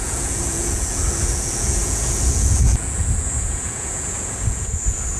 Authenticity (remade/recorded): remade